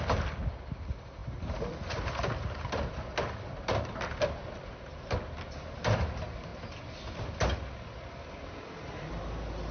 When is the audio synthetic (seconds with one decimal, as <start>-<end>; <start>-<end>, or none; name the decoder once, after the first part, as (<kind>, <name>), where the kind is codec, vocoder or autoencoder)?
none